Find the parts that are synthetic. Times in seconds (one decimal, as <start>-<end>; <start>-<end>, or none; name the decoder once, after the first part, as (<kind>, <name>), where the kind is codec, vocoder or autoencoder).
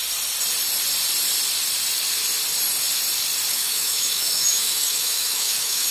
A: 3.5-5.9 (autoencoder, DAC-VAE)